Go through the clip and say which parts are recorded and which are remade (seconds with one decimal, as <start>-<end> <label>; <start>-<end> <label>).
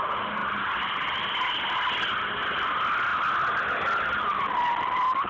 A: 0.0-5.3 recorded